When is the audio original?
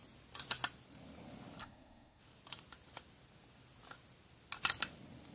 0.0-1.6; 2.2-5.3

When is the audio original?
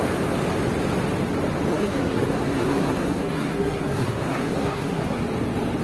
0.0-1.7; 5.2-5.8